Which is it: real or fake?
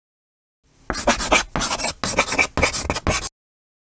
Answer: real